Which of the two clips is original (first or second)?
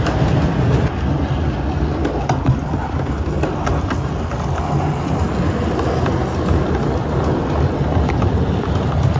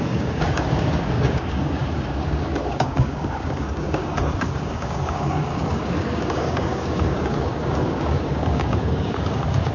first